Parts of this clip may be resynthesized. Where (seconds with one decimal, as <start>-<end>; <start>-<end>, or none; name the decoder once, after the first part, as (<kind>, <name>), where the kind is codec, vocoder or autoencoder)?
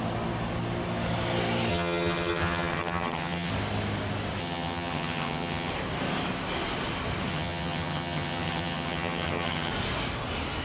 1.7-3.5 (vocoder, HiFi-GAN); 4.4-5.7; 7.3-9.7